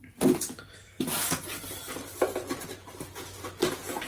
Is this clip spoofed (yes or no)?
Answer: no